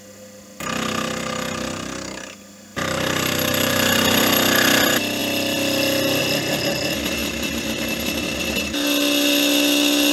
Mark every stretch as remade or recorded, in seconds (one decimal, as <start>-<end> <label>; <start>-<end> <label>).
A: 0.0-2.7 recorded; 2.7-4.2 remade; 4.2-7.2 recorded; 7.2-8.4 remade; 8.4-10.1 recorded